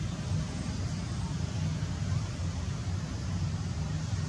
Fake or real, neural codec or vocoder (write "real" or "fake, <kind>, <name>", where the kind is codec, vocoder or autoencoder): real